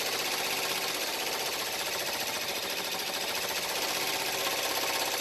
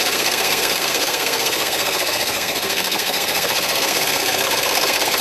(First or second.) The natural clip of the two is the first